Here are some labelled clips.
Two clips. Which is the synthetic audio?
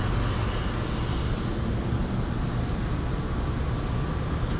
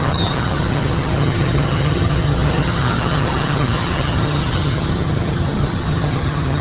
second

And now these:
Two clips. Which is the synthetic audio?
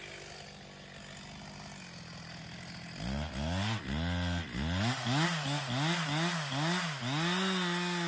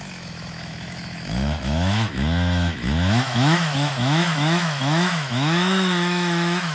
second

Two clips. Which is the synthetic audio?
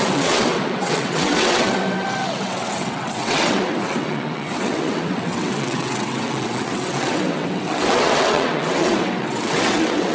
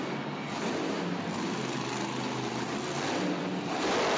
first